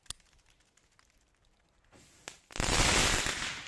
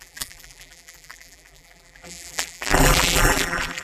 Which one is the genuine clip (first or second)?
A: first